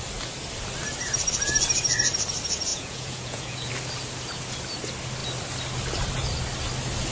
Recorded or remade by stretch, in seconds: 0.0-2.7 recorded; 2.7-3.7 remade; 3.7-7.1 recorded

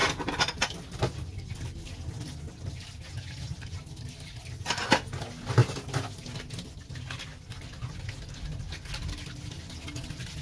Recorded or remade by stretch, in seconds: 0.0-10.4 recorded

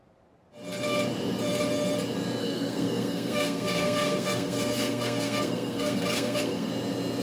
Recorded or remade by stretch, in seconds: 0.0-2.4 recorded; 2.4-6.7 remade; 6.7-7.2 recorded

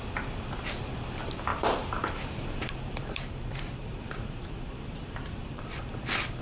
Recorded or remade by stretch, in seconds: 0.0-1.5 recorded; 1.5-3.4 remade; 3.4-3.8 recorded; 3.8-5.9 remade; 5.9-6.4 recorded

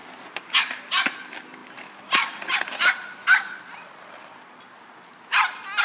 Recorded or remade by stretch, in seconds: 0.0-5.8 recorded